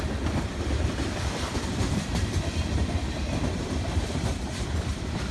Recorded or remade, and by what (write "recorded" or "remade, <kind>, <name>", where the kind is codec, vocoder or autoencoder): remade, vocoder, BigVGAN v2